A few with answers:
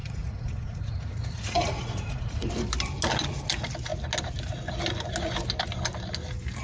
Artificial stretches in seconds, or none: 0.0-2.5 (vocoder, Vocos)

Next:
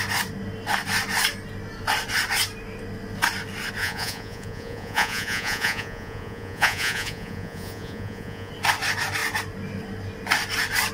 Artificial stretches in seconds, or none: 3.8-8.5 (vocoder, Vocos)

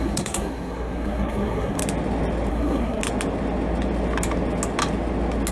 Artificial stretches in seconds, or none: 0.0-1.8 (codec, SNAC); 2.5-3.0

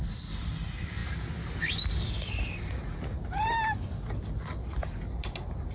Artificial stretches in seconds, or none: none